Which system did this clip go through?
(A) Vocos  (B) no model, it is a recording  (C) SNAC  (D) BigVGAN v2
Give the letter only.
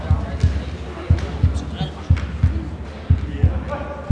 B